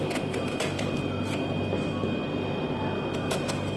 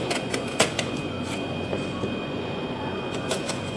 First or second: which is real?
first